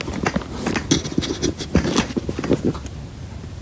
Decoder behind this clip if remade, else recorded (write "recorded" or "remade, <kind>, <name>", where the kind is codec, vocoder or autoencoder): recorded